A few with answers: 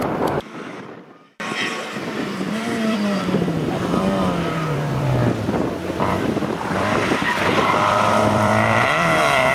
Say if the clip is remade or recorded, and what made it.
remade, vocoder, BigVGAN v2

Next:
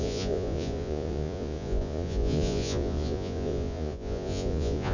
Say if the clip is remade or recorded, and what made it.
remade, vocoder, Vocos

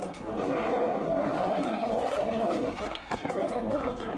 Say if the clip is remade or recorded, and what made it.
remade, codec, SNAC